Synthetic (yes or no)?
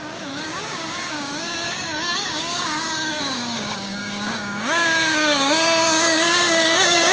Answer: yes